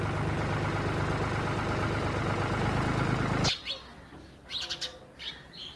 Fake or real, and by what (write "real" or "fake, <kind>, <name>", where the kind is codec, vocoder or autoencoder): real